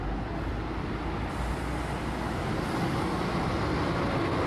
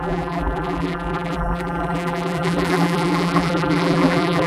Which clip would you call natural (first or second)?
first